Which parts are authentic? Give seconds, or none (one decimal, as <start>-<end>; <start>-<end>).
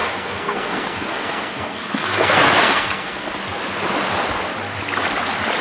3.4-5.6